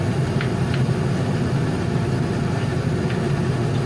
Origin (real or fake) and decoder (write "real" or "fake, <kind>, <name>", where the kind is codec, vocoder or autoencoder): real